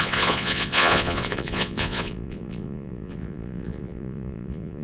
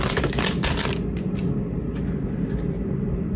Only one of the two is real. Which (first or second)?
second